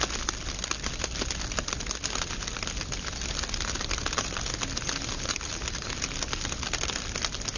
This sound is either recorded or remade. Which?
recorded